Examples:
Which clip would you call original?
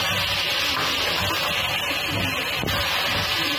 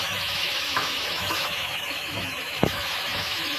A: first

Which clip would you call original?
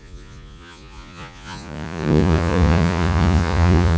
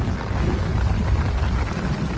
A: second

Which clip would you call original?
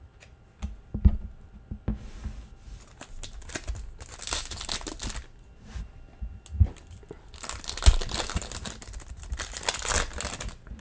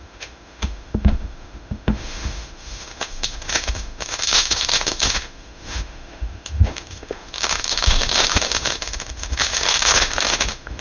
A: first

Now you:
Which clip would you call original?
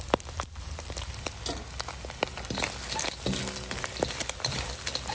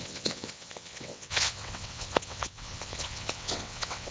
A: first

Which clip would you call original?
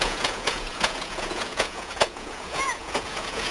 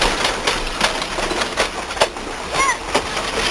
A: second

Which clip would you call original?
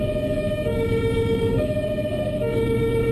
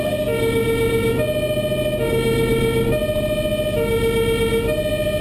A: second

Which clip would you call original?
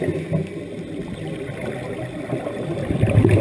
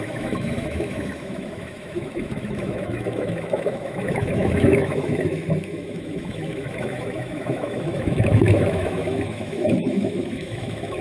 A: first